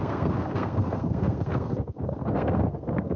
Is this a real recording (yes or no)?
no